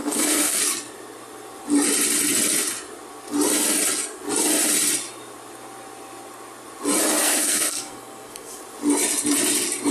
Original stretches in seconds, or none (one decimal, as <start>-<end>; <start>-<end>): 0.6-7.2; 8.6-9.9